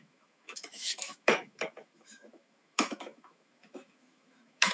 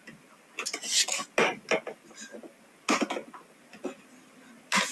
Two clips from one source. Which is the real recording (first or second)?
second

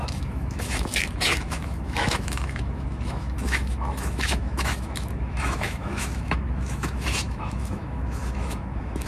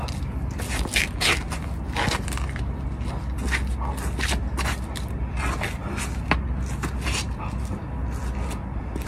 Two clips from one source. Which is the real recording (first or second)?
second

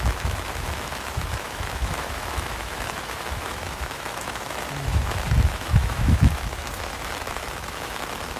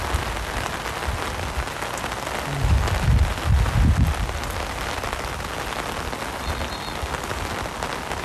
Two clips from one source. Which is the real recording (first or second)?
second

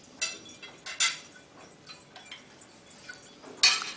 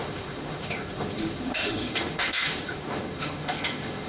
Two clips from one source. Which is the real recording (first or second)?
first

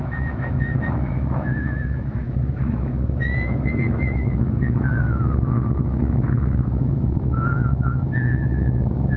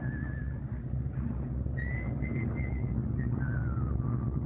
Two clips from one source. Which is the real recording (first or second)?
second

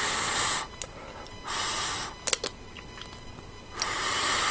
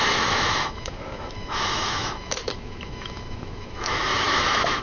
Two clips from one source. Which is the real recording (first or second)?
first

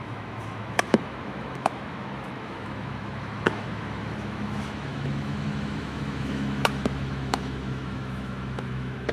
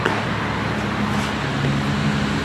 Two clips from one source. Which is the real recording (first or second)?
second